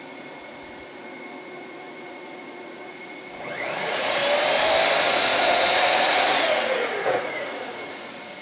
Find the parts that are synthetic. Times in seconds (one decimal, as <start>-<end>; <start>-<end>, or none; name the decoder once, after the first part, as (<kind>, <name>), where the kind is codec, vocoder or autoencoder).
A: 0.0-4.2 (vocoder, Vocos); 5.0-8.4